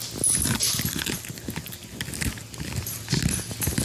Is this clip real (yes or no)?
yes